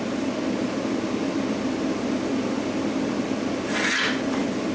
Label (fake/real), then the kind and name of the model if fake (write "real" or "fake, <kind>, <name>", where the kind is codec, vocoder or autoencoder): real